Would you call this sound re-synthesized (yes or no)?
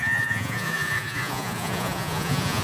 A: yes